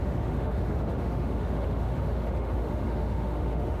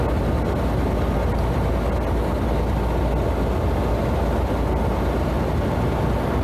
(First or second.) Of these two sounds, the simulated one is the first